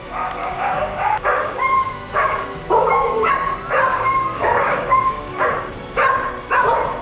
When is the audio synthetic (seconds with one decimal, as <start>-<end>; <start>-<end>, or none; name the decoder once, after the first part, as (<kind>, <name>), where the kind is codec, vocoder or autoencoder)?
0.4-3.3 (codec, DAC); 3.9-5.7